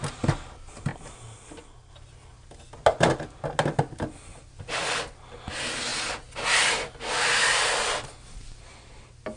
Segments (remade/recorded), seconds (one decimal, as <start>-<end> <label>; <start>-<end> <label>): 0.0-9.4 recorded

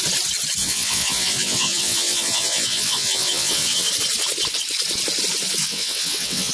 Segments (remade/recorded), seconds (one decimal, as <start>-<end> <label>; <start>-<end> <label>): 0.0-0.6 recorded; 0.6-3.9 remade; 3.9-5.6 recorded; 5.6-6.5 remade

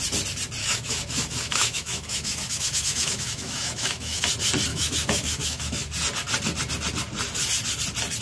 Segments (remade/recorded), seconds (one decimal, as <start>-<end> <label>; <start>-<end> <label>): 0.0-0.6 recorded; 0.6-4.3 remade; 4.3-4.7 recorded; 4.7-5.9 remade; 5.9-8.2 recorded

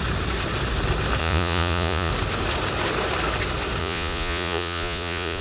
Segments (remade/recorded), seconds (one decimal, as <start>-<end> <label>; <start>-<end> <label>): 0.0-1.2 recorded; 1.2-2.1 remade; 2.1-3.8 recorded; 3.8-5.4 remade

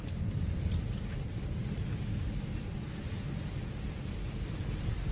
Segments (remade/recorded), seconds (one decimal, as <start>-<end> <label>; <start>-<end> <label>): 0.0-5.1 recorded